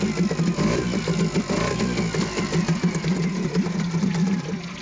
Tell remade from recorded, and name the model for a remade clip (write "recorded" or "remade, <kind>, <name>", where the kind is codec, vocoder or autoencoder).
recorded